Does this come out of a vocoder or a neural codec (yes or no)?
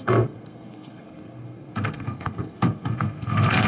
yes